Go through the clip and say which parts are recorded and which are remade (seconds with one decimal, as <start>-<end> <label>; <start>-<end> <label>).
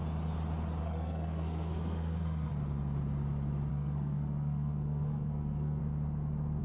0.0-0.8 recorded; 0.8-2.5 remade; 2.5-3.7 recorded; 3.7-5.8 remade; 5.8-6.6 recorded